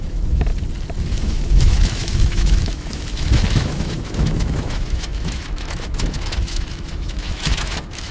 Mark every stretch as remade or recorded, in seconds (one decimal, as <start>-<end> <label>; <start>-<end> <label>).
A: 0.0-0.5 remade; 0.5-1.1 recorded; 1.1-8.1 remade